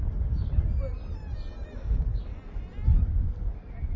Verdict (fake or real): real